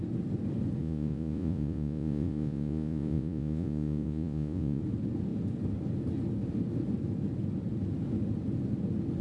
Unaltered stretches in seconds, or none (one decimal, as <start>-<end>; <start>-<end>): 0.0-0.8; 4.8-9.2